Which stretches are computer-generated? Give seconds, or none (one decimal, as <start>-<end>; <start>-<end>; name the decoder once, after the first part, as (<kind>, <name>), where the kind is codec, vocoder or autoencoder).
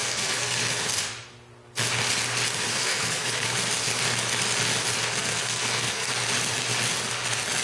0.0-0.6 (codec, SNAC); 2.7-3.6; 5.1-6.1